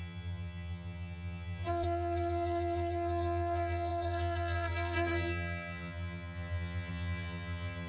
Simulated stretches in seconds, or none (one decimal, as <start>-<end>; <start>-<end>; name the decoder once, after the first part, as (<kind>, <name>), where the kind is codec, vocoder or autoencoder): 0.0-7.9 (vocoder, HiFi-GAN)